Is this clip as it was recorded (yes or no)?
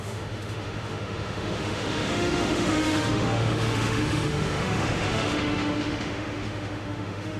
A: no